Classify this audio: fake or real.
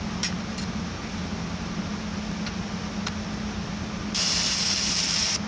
real